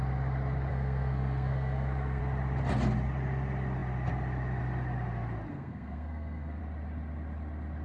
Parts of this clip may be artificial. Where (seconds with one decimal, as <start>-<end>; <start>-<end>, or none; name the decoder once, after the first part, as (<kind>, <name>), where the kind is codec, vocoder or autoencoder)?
0.7-2.2 (codec, SNAC); 5.5-6.6

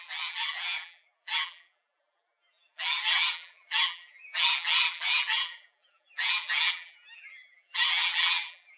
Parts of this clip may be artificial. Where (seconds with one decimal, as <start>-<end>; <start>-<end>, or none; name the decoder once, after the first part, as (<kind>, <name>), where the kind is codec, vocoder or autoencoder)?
0.0-8.8 (vocoder, BigVGAN v2)